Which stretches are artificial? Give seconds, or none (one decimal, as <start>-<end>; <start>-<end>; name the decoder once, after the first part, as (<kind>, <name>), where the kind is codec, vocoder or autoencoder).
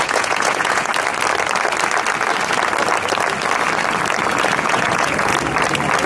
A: 0.0-0.9 (vocoder, Vocos); 4.6-5.3